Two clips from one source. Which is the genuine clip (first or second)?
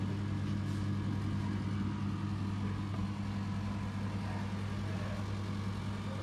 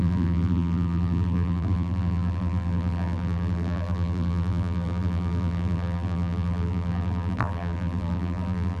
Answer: first